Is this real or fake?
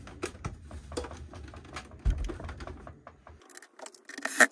real